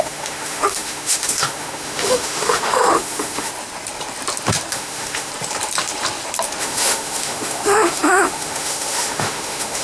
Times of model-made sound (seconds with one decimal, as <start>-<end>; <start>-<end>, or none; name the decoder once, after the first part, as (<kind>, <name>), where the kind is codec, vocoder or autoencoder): 0.0-3.5 (autoencoder, DAC-VAE); 4.7-5.3; 6.6-9.8